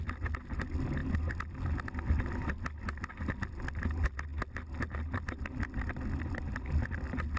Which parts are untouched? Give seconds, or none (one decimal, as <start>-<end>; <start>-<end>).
0.0-7.4